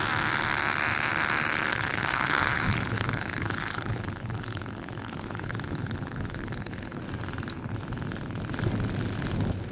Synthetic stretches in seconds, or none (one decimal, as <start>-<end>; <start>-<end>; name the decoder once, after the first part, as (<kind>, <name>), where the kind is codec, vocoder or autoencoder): 1.7-7.0 (codec, HILCodec)